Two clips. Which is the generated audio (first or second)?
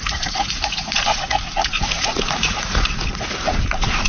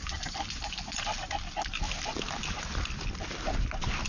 first